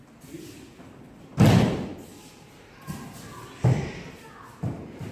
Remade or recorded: recorded